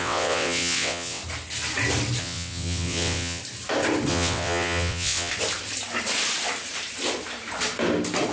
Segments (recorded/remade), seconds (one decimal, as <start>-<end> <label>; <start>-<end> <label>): 0.0-1.2 remade; 1.2-2.2 recorded; 2.2-3.4 remade; 3.4-4.1 recorded; 4.1-5.3 remade; 5.3-8.3 recorded